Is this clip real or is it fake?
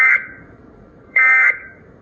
fake